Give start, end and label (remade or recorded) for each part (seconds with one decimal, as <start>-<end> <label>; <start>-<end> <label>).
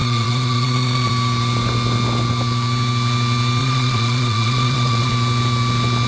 0.0-1.1 remade; 1.1-3.6 recorded; 3.6-5.1 remade; 5.1-6.1 recorded